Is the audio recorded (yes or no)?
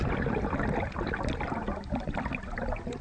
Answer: yes